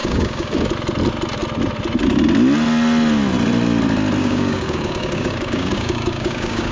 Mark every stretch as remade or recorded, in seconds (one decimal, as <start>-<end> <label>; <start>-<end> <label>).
0.0-0.7 remade; 0.7-4.2 recorded; 4.2-6.7 remade

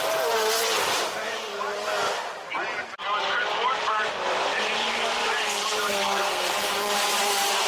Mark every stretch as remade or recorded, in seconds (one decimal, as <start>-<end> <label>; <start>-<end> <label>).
0.0-5.9 recorded; 5.9-6.5 remade; 6.5-7.7 recorded

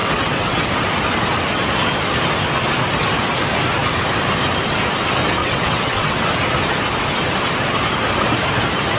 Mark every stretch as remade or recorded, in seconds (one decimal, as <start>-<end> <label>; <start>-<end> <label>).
0.0-0.6 remade; 0.6-5.4 recorded; 5.4-6.2 remade; 6.2-9.0 recorded

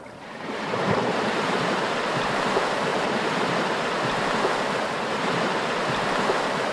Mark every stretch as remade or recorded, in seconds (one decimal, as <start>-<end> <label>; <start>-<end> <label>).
0.0-6.7 remade

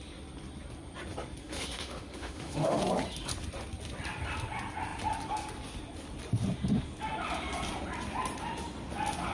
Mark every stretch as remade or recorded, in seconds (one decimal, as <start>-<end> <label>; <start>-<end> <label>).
0.0-1.4 recorded; 1.4-2.8 remade; 2.8-9.3 recorded

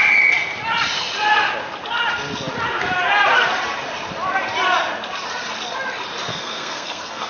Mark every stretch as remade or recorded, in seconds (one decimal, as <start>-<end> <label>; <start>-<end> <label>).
0.0-6.3 recorded; 6.3-7.3 remade